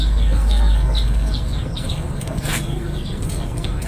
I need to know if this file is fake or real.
fake